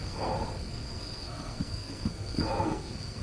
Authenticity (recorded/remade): remade